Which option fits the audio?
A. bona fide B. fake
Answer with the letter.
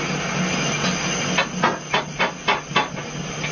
A